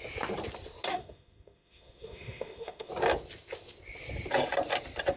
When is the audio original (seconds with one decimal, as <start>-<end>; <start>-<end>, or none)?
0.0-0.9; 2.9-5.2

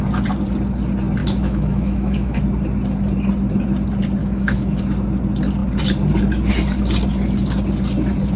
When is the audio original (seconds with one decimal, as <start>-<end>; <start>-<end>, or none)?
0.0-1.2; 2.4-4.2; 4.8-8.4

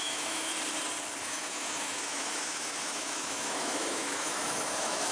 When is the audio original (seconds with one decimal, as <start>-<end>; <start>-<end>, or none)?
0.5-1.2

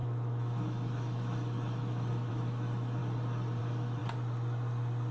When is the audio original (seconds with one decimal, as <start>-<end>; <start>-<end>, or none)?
3.0-3.6; 4.0-5.1

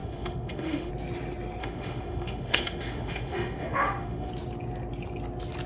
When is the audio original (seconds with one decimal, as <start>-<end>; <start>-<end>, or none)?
0.9-1.6; 4.3-5.7

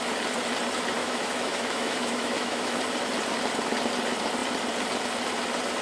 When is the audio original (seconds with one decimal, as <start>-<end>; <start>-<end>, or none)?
0.0-1.0; 2.8-5.8

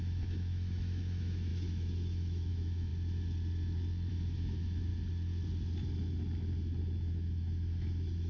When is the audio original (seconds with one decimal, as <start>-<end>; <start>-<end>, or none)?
2.9-4.1; 4.9-6.8